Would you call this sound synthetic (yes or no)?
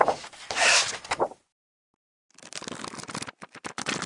no